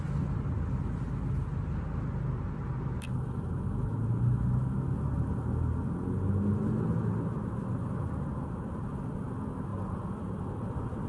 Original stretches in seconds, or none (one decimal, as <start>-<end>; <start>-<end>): 0.0-11.1

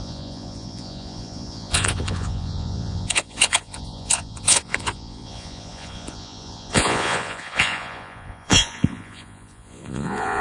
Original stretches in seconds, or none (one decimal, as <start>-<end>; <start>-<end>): none